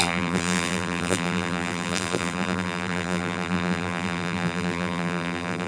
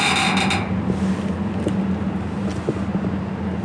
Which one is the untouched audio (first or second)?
second